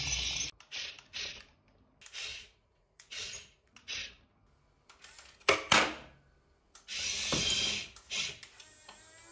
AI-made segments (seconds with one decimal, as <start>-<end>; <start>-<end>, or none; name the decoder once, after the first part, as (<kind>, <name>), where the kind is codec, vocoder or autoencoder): 2.3-4.2 (vocoder, Vocos)